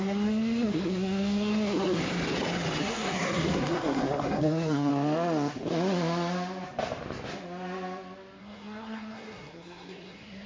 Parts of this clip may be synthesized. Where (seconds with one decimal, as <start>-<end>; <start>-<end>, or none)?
0.0-2.0; 2.8-4.9; 8.4-10.5